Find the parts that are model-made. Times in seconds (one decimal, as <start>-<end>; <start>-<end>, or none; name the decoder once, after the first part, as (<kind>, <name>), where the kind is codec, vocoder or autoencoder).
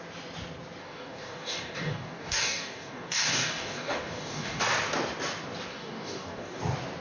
0.8-4.6 (codec, DAC); 5.7-6.6